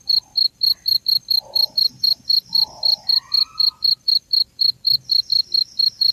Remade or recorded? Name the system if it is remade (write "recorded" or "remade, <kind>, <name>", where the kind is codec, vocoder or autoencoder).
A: recorded